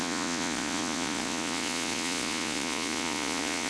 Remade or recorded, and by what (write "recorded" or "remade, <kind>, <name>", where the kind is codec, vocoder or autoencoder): remade, vocoder, Vocos